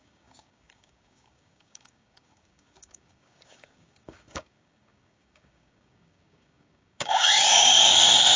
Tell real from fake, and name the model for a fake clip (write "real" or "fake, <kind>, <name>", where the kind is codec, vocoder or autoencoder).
fake, codec, DAC